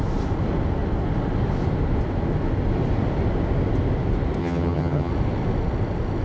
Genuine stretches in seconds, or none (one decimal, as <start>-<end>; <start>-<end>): 0.0-4.4; 5.1-6.2